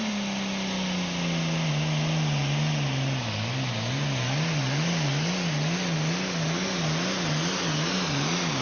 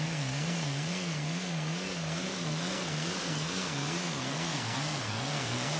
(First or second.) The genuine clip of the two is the first